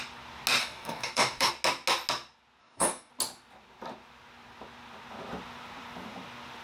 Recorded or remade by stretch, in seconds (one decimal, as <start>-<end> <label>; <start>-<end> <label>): 0.0-0.6 recorded; 0.6-1.5 remade; 1.5-2.6 recorded; 2.6-3.1 remade; 3.1-6.6 recorded